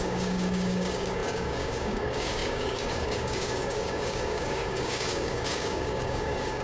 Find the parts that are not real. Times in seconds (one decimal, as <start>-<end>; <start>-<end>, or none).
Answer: 0.0-6.6